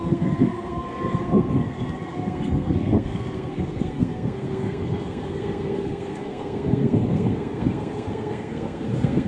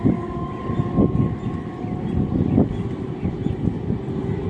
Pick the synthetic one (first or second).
first